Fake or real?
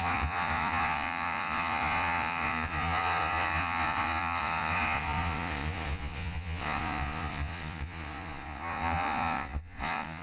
fake